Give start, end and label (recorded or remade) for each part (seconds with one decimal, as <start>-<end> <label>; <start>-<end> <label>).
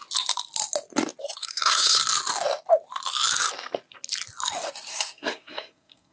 0.0-1.2 recorded; 1.2-2.0 remade; 2.0-4.9 recorded; 4.9-6.1 remade